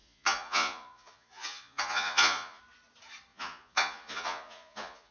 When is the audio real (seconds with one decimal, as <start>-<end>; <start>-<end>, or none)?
2.6-3.3